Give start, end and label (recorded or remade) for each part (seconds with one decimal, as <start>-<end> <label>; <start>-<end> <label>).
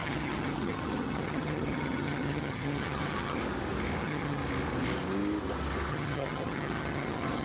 0.0-3.4 remade; 3.4-4.0 recorded; 4.0-4.4 remade; 4.4-5.9 recorded; 5.9-7.4 remade